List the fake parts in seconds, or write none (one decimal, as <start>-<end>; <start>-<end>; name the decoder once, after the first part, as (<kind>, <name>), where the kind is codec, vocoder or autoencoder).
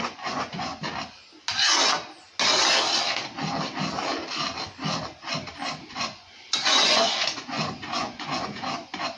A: 0.0-0.7 (vocoder, Vocos); 5.9-9.2